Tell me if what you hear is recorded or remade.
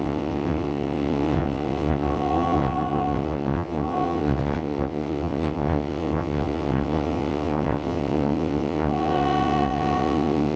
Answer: remade